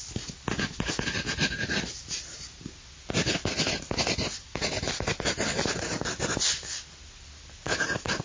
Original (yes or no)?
yes